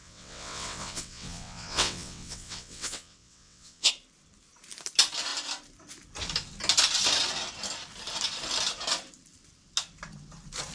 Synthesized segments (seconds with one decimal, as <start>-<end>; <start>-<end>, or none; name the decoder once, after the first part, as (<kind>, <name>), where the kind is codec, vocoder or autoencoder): 0.0-3.9 (vocoder, WaveNeXt)

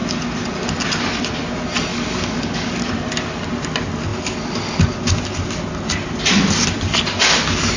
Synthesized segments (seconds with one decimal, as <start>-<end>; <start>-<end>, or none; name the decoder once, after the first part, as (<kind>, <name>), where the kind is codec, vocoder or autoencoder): 1.9-2.9 (codec, DAC)

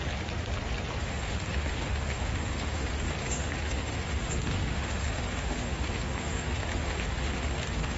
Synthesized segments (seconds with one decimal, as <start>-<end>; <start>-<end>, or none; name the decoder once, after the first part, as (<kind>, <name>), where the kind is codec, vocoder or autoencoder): 1.0-8.0 (autoencoder, DAC-VAE)

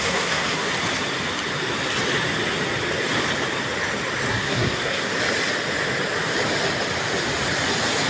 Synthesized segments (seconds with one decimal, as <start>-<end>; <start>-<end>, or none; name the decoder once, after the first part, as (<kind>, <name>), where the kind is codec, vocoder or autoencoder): 0.0-0.7 (codec, SNAC); 4.3-5.1

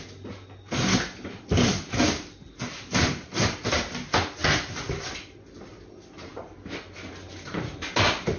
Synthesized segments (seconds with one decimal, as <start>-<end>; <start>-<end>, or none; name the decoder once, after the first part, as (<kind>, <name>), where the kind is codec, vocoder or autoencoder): none

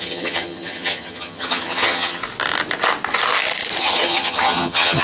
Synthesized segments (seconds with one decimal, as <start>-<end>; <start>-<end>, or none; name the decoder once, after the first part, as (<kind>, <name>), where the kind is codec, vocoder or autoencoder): 0.0-2.2 (vocoder, HiFi-GAN); 3.8-5.0

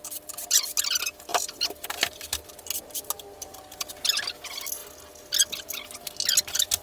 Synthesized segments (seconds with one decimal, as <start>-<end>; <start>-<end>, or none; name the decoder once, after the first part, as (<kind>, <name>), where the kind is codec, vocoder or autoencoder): 1.3-2.3 (vocoder, BigVGAN v2)

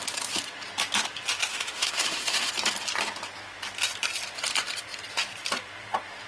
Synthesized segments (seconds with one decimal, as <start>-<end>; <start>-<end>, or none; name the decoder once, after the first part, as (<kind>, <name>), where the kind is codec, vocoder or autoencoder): 1.5-2.5 (autoencoder, DAC-VAE)